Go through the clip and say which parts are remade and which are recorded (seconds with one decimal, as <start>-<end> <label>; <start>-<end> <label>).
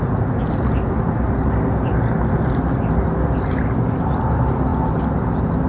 0.0-5.7 recorded